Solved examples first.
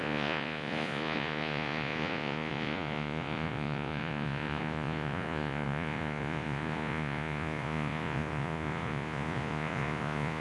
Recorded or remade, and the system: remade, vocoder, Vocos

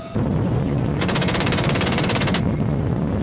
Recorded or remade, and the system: remade, vocoder, Vocos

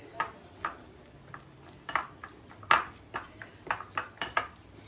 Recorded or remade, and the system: recorded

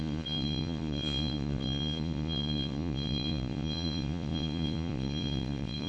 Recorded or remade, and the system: remade, vocoder, Vocos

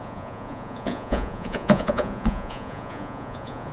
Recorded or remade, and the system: remade, vocoder, Vocos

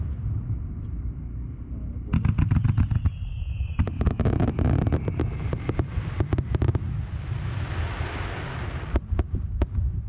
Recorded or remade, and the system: recorded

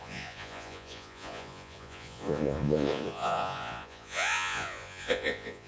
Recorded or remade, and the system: remade, vocoder, Vocos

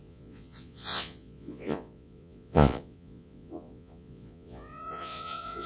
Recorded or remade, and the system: remade, vocoder, Vocos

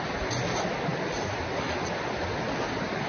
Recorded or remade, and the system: recorded